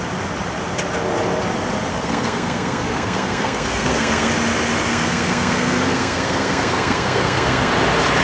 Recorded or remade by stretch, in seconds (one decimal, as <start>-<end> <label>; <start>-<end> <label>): 0.0-1.9 recorded; 1.9-4.3 remade; 4.3-4.9 recorded; 4.9-7.7 remade; 7.7-8.2 recorded